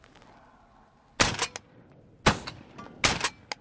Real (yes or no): yes